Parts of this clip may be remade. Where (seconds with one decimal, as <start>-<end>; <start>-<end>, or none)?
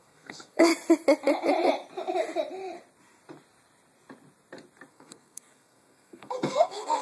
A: 0.0-0.7; 4.9-7.0